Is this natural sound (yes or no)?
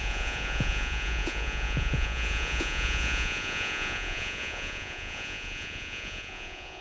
no